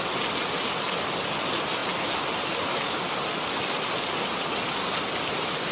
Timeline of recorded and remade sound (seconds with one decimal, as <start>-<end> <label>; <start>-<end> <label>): 0.0-5.7 recorded